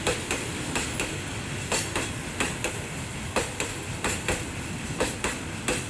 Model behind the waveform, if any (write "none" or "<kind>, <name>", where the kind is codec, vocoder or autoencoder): none